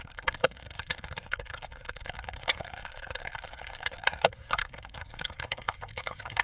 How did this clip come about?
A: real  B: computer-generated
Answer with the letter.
B